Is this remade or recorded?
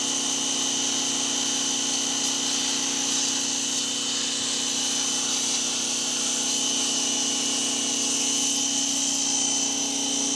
recorded